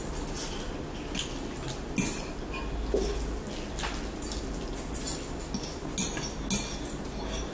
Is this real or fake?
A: real